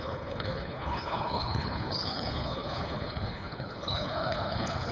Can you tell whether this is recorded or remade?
remade